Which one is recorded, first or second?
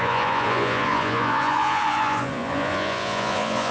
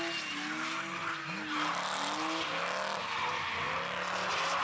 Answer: second